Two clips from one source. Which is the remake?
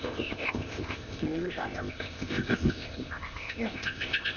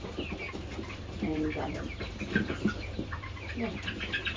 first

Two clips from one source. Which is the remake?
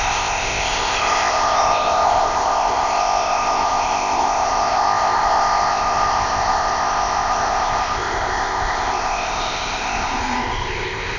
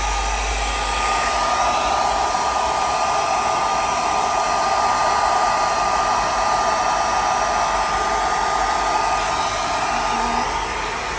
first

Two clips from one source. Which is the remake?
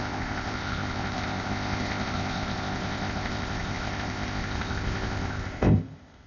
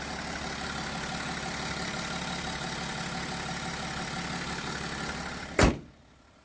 first